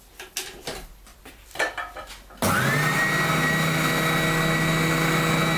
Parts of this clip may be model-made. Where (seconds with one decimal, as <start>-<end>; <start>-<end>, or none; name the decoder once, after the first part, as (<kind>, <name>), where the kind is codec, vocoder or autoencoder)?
1.1-2.1 (vocoder, BigVGAN v2)